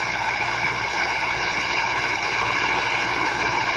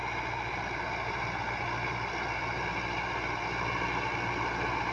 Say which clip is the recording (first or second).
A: second